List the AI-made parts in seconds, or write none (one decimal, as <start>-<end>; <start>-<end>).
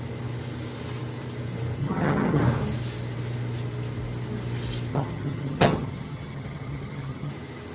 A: 1.8-2.4; 4.9-7.3